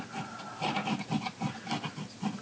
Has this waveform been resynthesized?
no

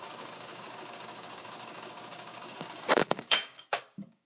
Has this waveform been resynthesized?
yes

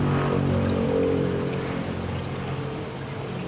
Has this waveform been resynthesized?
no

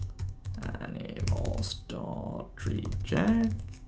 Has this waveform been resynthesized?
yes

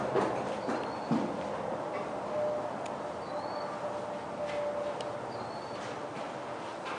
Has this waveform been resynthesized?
no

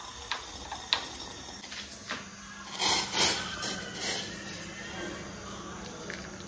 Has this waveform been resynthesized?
no